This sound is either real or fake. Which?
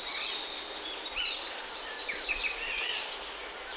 real